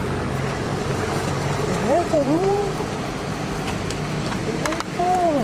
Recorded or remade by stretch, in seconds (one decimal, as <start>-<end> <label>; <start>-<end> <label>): 0.0-0.7 recorded; 0.7-3.9 remade; 3.9-4.4 recorded; 4.4-5.4 remade